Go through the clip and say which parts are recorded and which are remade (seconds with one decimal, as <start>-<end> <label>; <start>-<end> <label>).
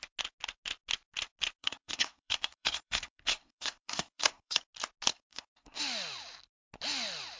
0.0-1.6 recorded; 1.6-4.6 remade; 4.6-5.1 recorded; 5.1-5.8 remade; 5.8-7.4 recorded